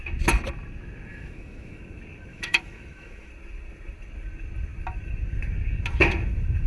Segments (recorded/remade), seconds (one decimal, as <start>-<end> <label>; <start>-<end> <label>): 0.0-1.1 recorded; 1.1-1.8 remade; 1.8-2.3 recorded; 2.3-3.3 remade; 3.3-6.7 recorded